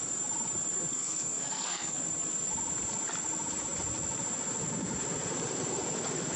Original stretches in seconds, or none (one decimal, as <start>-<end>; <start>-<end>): 0.0-0.9; 2.0-6.4